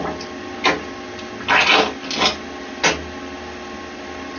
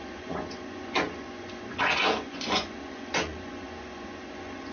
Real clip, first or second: first